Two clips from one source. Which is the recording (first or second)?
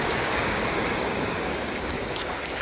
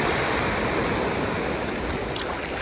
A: second